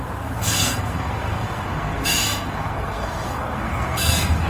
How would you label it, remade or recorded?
remade